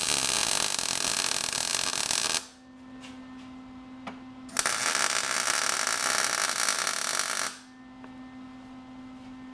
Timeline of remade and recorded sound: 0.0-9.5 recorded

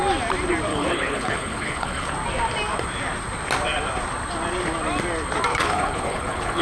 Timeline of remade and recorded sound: 0.0-0.7 recorded; 0.7-2.1 remade; 2.1-5.5 recorded; 5.5-6.6 remade

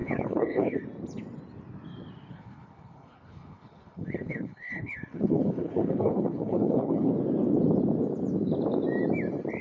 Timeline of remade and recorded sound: 0.0-0.8 remade; 0.8-2.3 recorded; 2.3-7.1 remade; 7.1-9.6 recorded